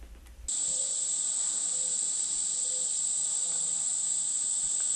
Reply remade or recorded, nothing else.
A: recorded